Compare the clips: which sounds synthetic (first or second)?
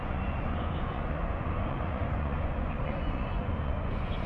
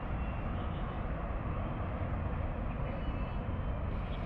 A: first